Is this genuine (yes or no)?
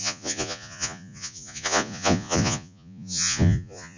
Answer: no